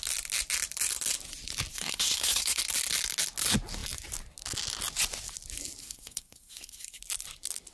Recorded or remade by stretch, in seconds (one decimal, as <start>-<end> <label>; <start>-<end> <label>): 0.0-1.7 recorded; 1.7-2.6 remade; 2.6-5.8 recorded; 5.8-7.0 remade; 7.0-7.7 recorded

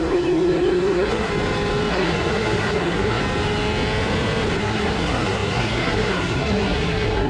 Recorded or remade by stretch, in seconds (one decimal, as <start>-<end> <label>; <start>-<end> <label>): 0.0-1.3 remade; 1.3-1.9 recorded; 1.9-3.2 remade; 3.2-4.6 recorded; 4.6-7.3 remade

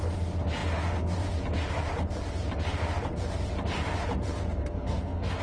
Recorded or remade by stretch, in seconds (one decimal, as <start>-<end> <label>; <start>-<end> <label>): 0.0-4.6 recorded; 4.6-5.4 remade

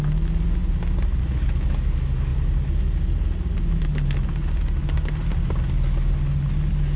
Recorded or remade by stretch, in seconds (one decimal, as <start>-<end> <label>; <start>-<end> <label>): 0.0-7.0 recorded

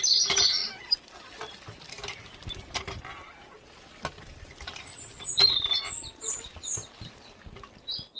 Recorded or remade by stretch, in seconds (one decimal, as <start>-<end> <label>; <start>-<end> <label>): 0.0-8.2 recorded

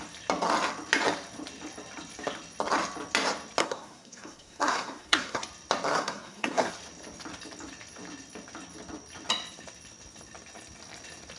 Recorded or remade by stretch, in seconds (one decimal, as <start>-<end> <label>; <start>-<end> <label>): 0.0-3.6 recorded; 3.6-5.4 remade; 5.4-5.9 recorded; 5.9-6.7 remade; 6.7-11.4 recorded

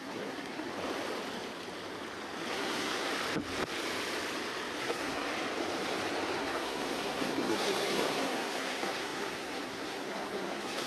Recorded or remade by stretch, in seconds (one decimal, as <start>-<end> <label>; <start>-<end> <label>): 0.0-0.7 remade; 0.7-2.5 recorded; 2.5-3.1 remade; 3.1-4.8 recorded; 4.8-5.3 remade; 5.3-6.4 recorded; 6.4-10.9 remade

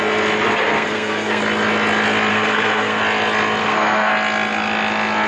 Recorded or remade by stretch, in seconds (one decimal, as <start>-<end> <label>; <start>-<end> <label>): 0.0-0.7 recorded; 0.7-1.4 remade; 1.4-2.3 recorded; 2.3-3.0 remade; 3.0-3.6 recorded; 3.6-4.1 remade; 4.1-5.3 recorded